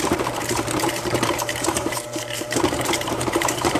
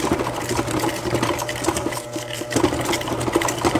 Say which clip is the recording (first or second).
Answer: second